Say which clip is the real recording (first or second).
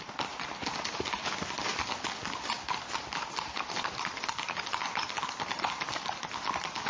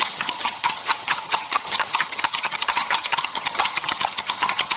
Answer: first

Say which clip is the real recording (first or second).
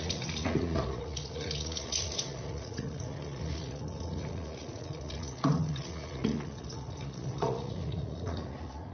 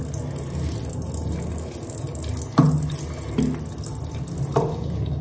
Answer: second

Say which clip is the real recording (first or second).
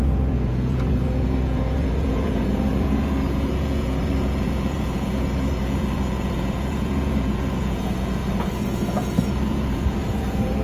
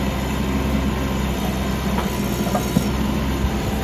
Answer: second